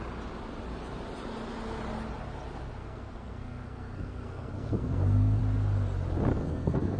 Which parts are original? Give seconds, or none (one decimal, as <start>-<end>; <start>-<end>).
0.0-2.8; 5.4-6.3